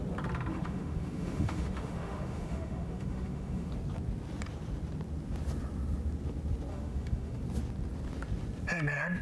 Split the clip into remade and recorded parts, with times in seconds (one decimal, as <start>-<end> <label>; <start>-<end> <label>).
0.0-0.5 recorded; 0.5-3.7 remade; 3.7-6.7 recorded; 6.7-7.4 remade; 7.4-9.2 recorded